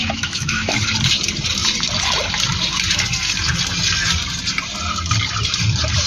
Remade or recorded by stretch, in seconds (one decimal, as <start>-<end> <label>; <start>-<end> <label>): 0.0-0.8 remade; 0.8-6.1 recorded